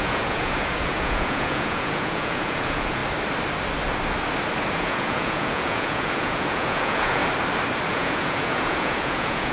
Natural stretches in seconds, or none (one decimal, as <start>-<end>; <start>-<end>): 3.0-4.7; 7.2-7.9